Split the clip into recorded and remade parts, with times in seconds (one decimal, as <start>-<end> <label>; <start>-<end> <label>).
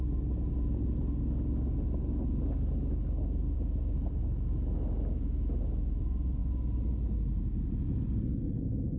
0.0-9.0 recorded